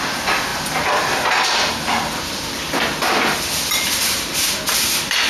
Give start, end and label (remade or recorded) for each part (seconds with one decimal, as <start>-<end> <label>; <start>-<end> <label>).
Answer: 0.0-5.3 recorded